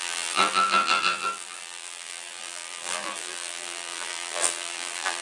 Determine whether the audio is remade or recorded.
remade